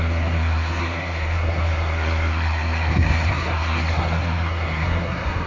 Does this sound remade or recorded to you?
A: remade